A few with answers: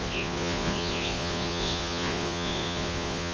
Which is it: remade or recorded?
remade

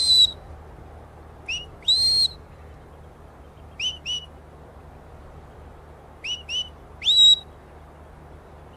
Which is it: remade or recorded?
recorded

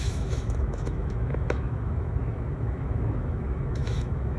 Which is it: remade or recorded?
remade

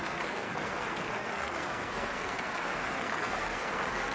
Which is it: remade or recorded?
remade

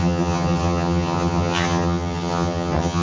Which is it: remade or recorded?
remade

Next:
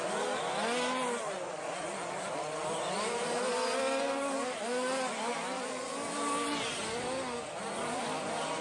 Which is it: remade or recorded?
recorded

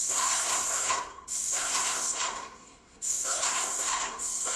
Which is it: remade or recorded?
remade